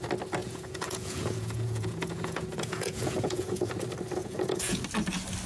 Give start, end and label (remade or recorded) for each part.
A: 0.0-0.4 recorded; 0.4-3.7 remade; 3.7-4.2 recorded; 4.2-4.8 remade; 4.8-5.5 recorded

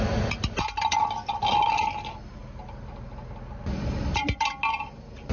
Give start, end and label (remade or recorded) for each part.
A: 0.0-5.3 recorded

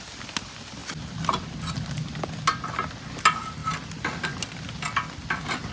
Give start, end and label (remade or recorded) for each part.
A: 0.0-5.7 recorded

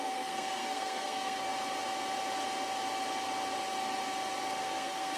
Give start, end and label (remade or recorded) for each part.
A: 0.0-1.5 remade; 1.5-4.6 recorded; 4.6-5.2 remade

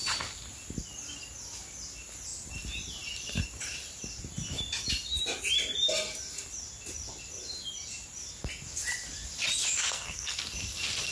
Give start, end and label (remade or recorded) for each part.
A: 0.0-9.8 recorded; 9.8-10.4 remade; 10.4-11.1 recorded